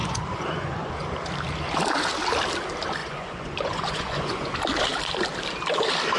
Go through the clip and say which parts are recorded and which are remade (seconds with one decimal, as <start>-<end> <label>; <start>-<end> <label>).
0.0-0.9 remade; 0.9-3.0 recorded; 3.0-4.5 remade; 4.5-6.2 recorded